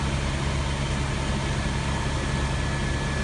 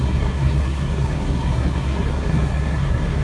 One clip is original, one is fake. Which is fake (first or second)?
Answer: second